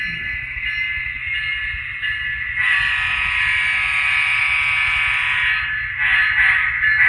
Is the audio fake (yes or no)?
no